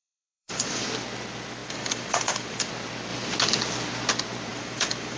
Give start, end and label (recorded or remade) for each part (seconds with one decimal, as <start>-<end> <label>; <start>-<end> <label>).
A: 0.0-0.8 remade; 0.8-1.6 recorded; 1.6-2.7 remade; 2.7-4.5 recorded; 4.5-5.2 remade